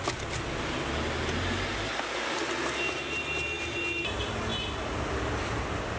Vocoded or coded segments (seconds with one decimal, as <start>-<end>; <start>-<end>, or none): none